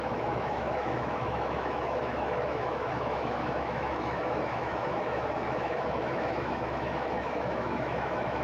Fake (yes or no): yes